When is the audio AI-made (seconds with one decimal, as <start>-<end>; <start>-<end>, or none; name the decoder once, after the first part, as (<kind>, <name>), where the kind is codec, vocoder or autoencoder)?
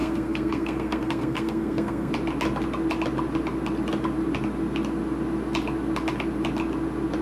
0.0-2.1 (codec, SNAC)